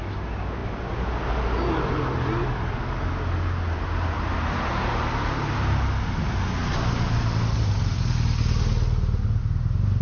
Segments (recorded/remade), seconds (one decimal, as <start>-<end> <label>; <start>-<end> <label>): 0.0-10.0 recorded